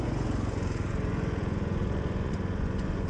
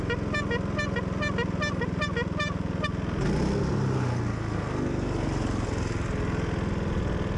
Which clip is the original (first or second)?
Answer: second